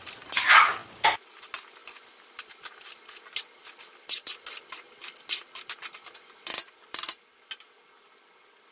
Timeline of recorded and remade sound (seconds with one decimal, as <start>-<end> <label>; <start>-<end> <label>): 0.0-5.0 recorded; 5.0-7.3 remade; 7.3-8.7 recorded